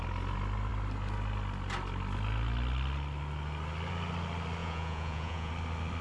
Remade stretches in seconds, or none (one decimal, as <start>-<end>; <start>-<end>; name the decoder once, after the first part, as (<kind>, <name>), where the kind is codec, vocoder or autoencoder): 4.6-5.5 (vocoder, Vocos)